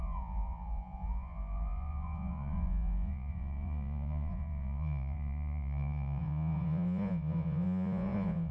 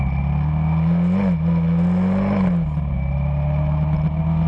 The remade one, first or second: first